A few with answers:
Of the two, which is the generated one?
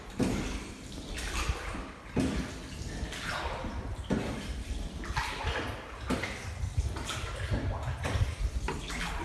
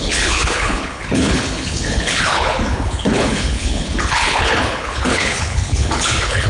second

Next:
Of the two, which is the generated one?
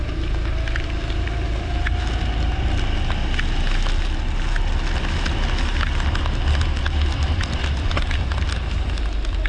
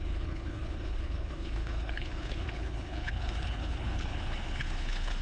second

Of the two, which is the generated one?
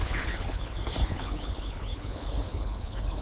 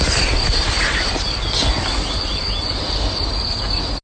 first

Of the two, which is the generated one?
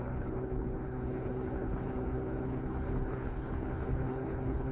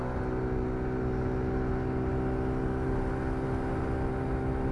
first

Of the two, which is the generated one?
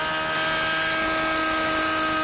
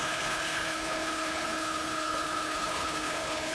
second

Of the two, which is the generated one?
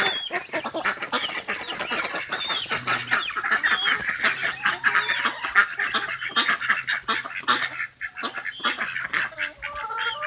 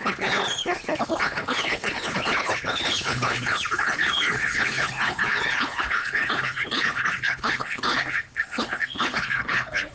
second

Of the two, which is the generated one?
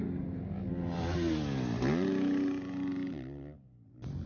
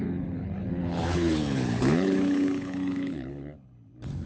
second